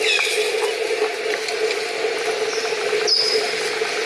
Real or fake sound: real